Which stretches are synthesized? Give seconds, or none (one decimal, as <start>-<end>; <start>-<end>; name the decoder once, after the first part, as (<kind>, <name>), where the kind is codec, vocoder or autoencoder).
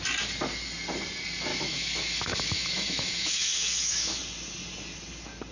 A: 1.5-4.2 (autoencoder, DAC-VAE)